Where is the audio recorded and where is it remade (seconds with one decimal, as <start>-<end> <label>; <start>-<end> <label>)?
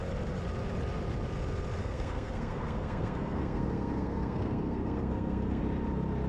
0.0-1.8 recorded; 1.8-5.6 remade; 5.6-6.3 recorded